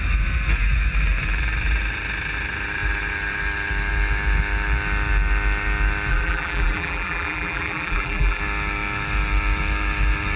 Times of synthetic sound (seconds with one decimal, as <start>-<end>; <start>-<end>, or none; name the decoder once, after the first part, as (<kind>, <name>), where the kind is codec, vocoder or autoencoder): 6.1-8.4 (vocoder, BigVGAN v2)